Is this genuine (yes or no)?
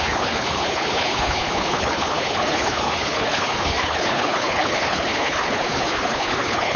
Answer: no